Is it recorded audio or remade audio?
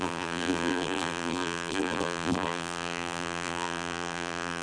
remade